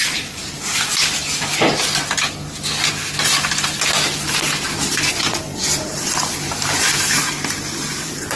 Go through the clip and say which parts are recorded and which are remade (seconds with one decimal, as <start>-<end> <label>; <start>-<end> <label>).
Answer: 0.0-1.0 remade; 1.0-4.3 recorded; 4.3-7.2 remade; 7.2-7.9 recorded; 7.9-8.4 remade